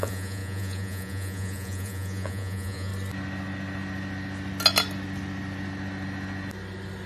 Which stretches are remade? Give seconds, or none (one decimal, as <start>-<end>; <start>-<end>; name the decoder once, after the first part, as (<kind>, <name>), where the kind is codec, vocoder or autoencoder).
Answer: 0.0-2.9 (vocoder, Vocos)